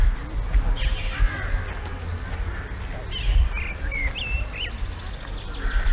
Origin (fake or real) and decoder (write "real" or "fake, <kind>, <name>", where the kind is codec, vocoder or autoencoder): real